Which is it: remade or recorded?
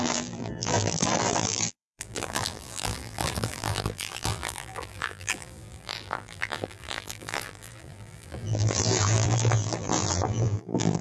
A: remade